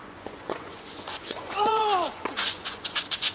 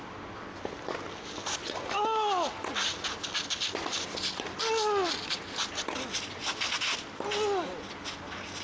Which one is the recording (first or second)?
second